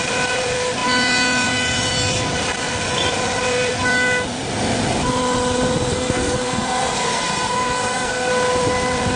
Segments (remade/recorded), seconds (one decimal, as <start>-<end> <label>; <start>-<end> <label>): 0.0-5.9 recorded; 5.9-8.3 remade; 8.3-9.2 recorded